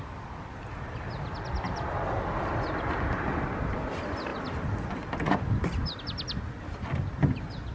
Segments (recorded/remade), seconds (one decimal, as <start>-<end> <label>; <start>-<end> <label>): 0.0-7.7 recorded